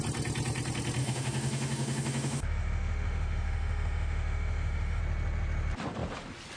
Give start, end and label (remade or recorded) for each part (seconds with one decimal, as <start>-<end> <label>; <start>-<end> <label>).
0.0-1.0 recorded; 1.0-5.0 remade; 5.0-6.6 recorded